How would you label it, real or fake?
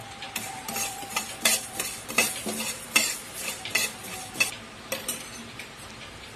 fake